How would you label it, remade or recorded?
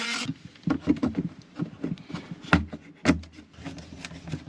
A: recorded